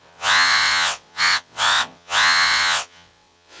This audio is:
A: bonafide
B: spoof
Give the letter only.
B